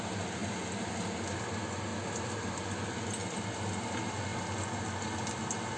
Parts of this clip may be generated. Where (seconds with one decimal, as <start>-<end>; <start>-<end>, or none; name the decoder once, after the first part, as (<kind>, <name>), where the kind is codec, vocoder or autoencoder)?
none